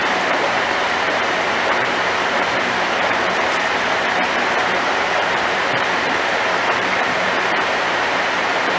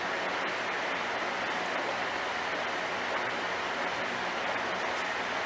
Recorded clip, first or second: second